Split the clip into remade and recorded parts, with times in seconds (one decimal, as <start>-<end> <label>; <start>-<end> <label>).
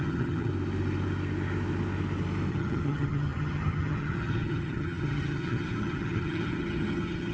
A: 0.0-0.5 remade; 0.5-2.5 recorded; 2.5-7.3 remade